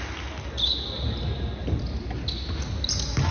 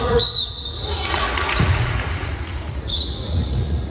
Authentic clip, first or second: first